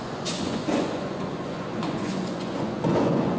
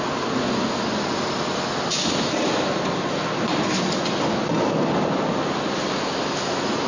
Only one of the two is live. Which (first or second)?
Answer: second